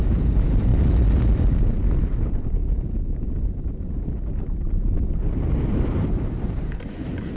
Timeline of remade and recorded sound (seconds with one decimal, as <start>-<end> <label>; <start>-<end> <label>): 0.0-0.7 remade; 0.7-2.0 recorded; 2.0-7.4 remade